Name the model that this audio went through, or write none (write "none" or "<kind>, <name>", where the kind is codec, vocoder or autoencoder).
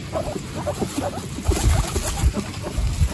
none